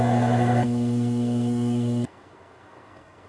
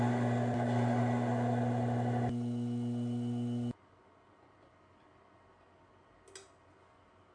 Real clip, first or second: second